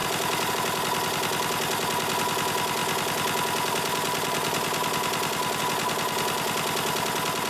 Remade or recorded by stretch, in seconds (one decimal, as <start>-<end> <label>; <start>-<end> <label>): 0.0-7.5 recorded